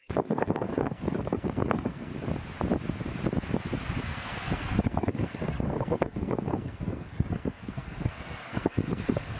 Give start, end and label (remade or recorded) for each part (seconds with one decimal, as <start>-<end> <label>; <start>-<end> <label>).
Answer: 0.0-2.1 remade; 2.1-4.0 recorded; 4.0-9.4 remade